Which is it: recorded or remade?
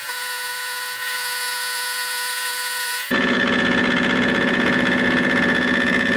remade